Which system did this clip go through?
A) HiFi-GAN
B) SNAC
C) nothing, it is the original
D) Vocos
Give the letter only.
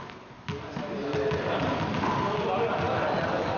C